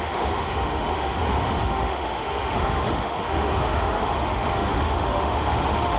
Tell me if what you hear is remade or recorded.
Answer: remade